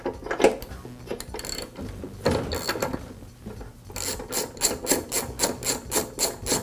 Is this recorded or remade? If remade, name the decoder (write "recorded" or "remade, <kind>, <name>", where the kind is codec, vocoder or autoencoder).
recorded